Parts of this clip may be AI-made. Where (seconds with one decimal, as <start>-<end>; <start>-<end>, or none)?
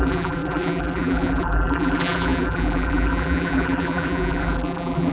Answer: 0.0-5.1